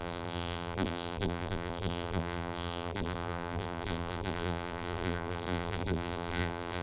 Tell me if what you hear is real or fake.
fake